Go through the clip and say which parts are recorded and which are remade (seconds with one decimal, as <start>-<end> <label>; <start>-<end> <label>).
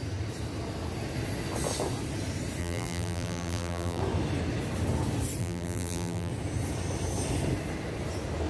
0.0-2.6 recorded; 2.6-4.0 remade; 4.0-5.4 recorded; 5.4-6.3 remade; 6.3-8.5 recorded